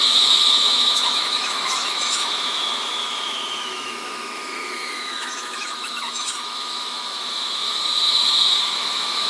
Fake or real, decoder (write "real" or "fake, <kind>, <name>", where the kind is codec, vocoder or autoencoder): fake, autoencoder, DAC-VAE